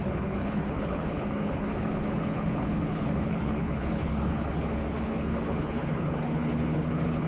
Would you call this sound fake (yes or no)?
yes